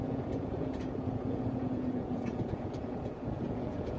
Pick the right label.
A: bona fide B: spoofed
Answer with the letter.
B